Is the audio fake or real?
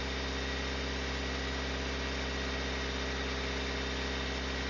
real